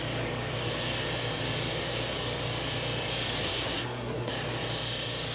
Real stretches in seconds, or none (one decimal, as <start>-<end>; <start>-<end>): 0.0-3.4; 4.3-5.3